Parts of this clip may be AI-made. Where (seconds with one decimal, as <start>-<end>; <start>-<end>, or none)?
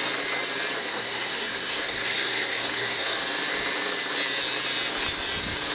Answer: 0.8-3.2